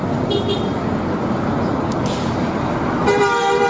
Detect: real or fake real